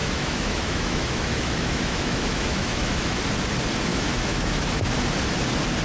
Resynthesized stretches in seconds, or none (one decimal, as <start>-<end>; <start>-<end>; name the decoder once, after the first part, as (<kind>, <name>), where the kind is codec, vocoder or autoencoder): 0.0-3.2 (autoencoder, DAC-VAE); 3.9-4.9